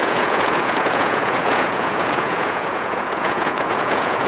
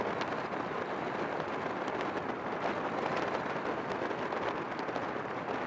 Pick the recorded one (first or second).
second